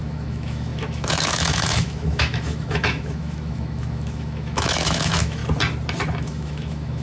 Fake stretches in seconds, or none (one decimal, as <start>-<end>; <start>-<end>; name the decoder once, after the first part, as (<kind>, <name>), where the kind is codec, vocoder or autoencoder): 0.0-5.4 (autoencoder, DAC-VAE); 6.2-7.0